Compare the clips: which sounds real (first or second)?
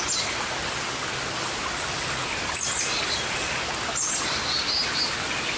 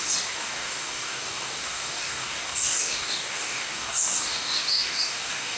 first